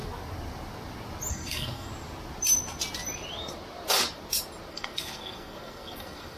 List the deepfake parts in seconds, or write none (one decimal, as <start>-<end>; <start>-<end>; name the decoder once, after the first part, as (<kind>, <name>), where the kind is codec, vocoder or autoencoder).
1.3-1.9 (codec, SNAC); 4.7-6.4